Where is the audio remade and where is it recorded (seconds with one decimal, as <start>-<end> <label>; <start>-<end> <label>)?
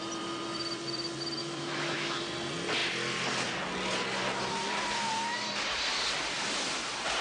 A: 0.0-1.4 recorded; 1.4-2.2 remade; 2.2-7.2 recorded